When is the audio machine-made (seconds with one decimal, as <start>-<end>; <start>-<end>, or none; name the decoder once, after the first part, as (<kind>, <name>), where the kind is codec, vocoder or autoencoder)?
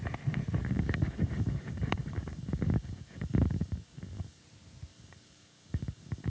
0.6-4.4 (codec, DAC); 4.9-6.3